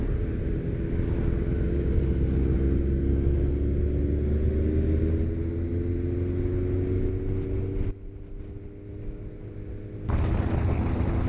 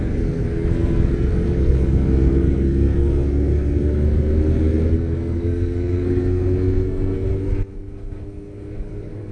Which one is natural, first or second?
first